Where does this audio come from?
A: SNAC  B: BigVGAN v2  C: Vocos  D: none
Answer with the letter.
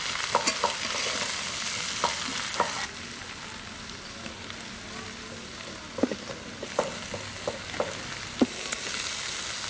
D